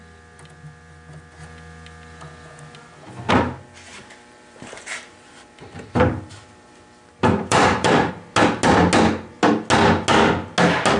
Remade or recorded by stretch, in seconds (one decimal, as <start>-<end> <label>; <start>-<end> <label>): 0.0-3.9 recorded; 3.9-8.1 remade; 8.1-11.0 recorded